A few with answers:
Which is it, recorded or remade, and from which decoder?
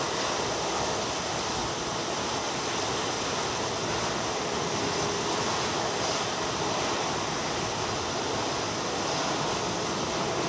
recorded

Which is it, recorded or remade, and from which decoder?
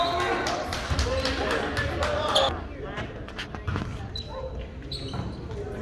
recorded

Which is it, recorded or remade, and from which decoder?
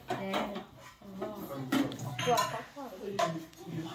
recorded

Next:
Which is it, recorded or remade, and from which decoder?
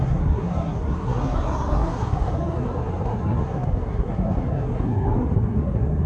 remade, codec, SNAC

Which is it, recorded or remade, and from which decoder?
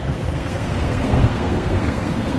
remade, codec, SNAC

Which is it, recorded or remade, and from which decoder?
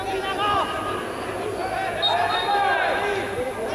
recorded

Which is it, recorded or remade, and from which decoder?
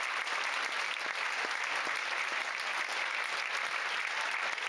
recorded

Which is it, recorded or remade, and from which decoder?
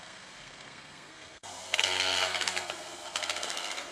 remade, codec, SNAC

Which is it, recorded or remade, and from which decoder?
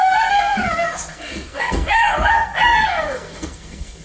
remade, codec, SNAC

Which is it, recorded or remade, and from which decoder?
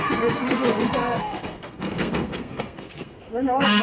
remade, codec, SNAC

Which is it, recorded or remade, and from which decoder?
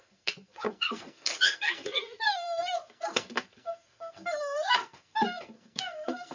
remade, codec, SNAC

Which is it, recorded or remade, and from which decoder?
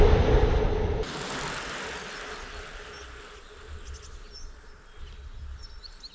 recorded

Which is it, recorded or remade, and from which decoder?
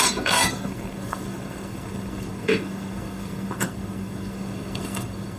remade, codec, SNAC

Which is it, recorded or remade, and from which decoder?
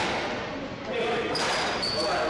recorded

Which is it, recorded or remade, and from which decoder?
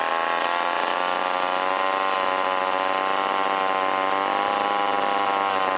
recorded